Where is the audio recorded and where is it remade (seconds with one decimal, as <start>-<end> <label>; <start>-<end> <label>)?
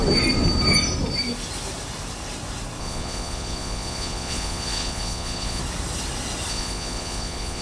0.0-2.8 recorded; 2.8-5.6 remade; 5.6-6.5 recorded; 6.5-7.6 remade